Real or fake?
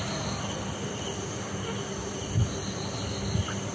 real